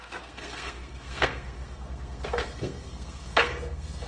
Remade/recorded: remade